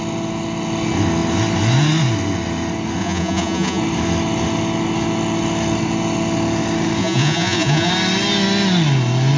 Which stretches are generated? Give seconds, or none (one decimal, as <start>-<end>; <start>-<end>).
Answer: 3.0-3.8; 7.0-7.9